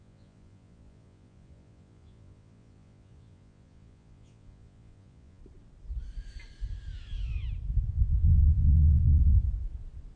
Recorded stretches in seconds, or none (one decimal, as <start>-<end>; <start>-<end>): 5.4-7.9; 9.2-10.2